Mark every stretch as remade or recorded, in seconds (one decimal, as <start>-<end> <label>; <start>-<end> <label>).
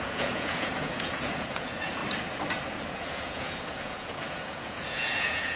0.0-2.0 remade; 2.0-2.9 recorded; 2.9-5.5 remade